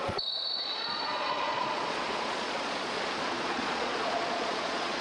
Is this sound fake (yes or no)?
yes